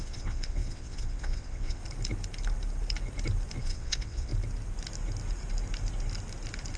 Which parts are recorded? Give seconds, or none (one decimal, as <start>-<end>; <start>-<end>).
1.8-3.6; 4.3-6.8